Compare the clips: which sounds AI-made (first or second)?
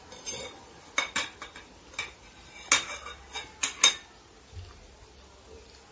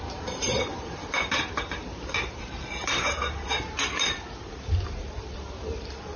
second